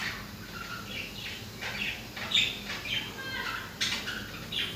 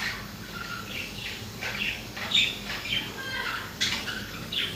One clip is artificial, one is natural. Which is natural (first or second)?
first